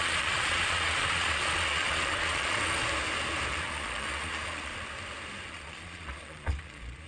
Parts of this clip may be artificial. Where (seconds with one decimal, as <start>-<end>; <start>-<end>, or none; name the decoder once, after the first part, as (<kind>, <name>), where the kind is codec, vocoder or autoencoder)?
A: 0.0-2.8 (vocoder, Vocos); 3.5-4.7; 5.5-7.1